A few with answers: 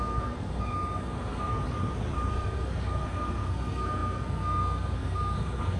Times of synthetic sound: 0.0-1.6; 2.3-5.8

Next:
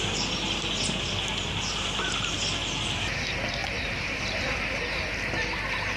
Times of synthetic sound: 3.6-4.6